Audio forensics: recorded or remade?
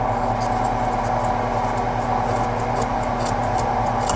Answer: recorded